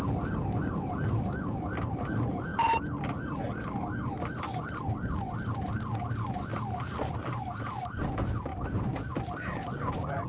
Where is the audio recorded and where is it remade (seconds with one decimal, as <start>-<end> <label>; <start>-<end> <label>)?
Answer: 0.0-2.5 remade; 2.5-6.1 recorded; 6.1-6.5 remade; 6.5-7.8 recorded; 7.8-10.3 remade